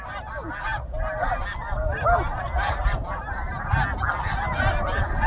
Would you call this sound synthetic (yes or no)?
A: no